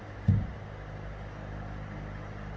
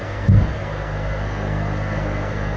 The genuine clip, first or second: first